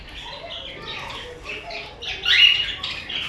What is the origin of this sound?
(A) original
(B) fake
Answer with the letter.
A